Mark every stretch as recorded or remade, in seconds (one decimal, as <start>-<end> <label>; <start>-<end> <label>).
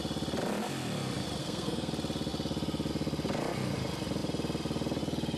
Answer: 0.0-1.4 recorded; 1.4-1.9 remade; 1.9-5.4 recorded